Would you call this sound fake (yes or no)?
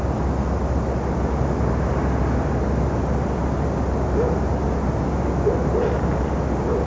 no